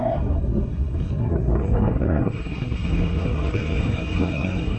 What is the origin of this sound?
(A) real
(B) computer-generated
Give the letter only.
B